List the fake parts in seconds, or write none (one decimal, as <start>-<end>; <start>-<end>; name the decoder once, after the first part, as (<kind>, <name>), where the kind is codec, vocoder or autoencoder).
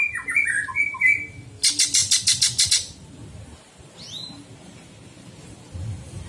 none